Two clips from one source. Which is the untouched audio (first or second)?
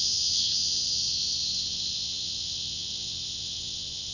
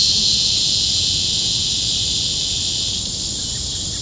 second